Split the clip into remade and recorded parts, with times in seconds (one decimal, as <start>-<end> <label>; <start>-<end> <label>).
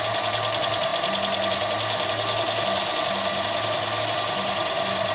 0.0-5.1 recorded